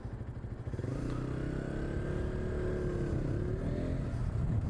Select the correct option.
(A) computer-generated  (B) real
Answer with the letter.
B